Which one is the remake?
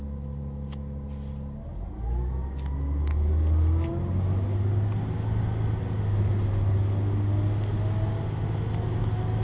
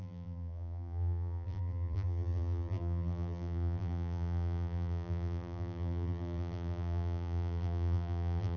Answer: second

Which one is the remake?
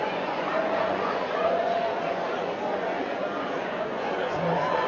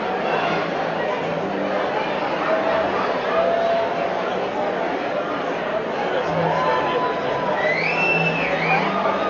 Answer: first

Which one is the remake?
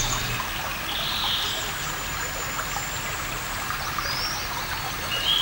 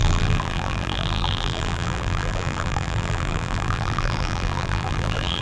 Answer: second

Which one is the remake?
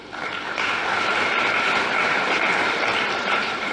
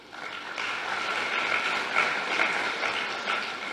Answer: first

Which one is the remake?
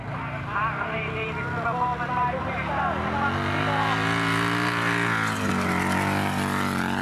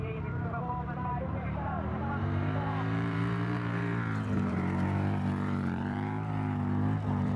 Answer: second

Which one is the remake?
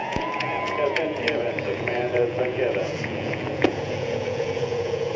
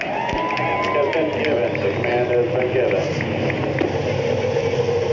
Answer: first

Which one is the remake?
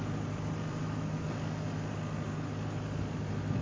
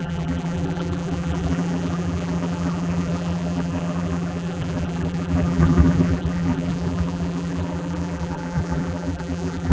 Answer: second